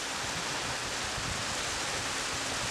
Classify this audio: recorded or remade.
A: recorded